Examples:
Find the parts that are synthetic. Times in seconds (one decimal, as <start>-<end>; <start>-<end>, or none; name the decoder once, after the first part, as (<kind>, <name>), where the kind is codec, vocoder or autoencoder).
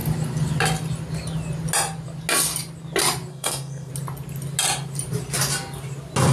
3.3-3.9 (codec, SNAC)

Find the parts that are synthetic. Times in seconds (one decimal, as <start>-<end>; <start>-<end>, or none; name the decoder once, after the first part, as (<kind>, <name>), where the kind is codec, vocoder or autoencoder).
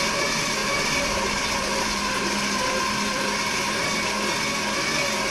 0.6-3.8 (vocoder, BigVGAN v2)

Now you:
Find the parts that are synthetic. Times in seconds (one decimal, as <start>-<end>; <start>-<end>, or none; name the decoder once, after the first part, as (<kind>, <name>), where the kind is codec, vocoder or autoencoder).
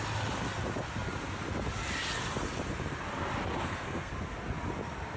3.6-4.1 (codec, SNAC)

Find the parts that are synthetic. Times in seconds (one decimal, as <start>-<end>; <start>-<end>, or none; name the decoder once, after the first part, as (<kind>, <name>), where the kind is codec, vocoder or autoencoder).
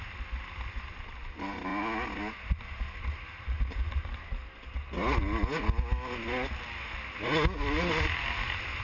none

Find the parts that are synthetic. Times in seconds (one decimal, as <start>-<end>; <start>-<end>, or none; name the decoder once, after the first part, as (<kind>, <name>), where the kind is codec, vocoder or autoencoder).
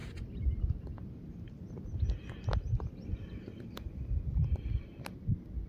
0.0-2.2 (vocoder, BigVGAN v2)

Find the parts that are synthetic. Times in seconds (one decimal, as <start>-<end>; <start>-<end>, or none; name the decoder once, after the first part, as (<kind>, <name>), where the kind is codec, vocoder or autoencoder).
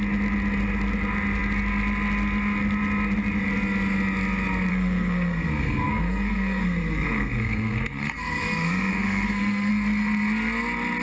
4.7-9.7 (codec, SNAC)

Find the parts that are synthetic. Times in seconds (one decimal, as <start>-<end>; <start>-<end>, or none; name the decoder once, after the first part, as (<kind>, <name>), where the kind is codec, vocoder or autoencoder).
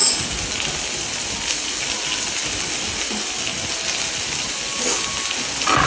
none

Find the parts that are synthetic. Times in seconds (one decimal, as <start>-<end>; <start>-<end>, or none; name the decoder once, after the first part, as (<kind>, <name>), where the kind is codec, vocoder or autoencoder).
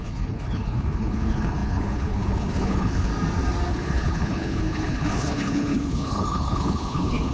0.0-3.1 (codec, HILCodec); 3.7-7.3